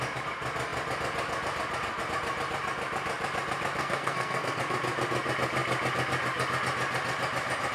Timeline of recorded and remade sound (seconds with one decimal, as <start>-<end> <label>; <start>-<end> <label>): 0.0-3.8 recorded; 3.8-4.6 remade; 4.6-7.7 recorded